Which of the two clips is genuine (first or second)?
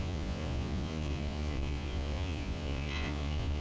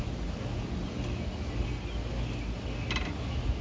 second